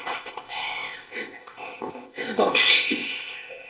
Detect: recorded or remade remade